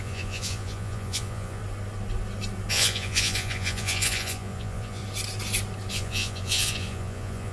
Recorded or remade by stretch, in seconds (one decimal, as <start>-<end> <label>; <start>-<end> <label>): 0.0-1.6 remade; 1.6-2.7 recorded; 2.7-5.0 remade; 5.0-5.9 recorded; 5.9-7.5 remade